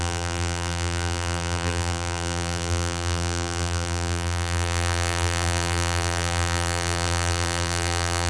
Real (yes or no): no